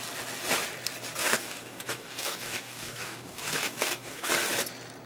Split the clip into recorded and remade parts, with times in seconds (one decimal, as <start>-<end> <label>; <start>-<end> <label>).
0.0-1.2 recorded; 1.2-4.3 remade; 4.3-5.1 recorded